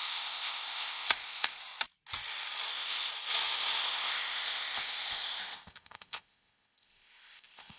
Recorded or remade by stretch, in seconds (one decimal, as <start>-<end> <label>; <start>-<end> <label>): 0.0-1.6 remade; 1.6-2.7 recorded; 2.7-3.1 remade; 3.1-3.8 recorded; 3.8-7.8 remade